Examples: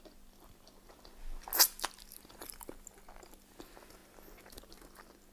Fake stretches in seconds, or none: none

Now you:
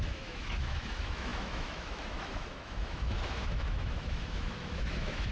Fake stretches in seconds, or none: 0.0-5.3 (autoencoder, DAC-VAE)

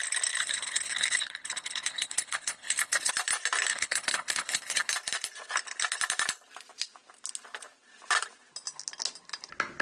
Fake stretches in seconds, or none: 0.4-3.1 (codec, HILCodec); 3.7-4.9

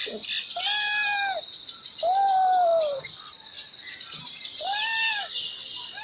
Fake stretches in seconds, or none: none